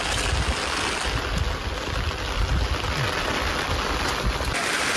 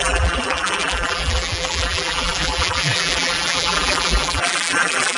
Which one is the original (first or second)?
first